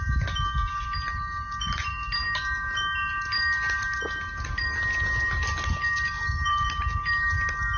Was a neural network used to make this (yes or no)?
no